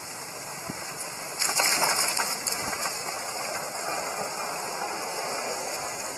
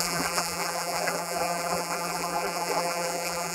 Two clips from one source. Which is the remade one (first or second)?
second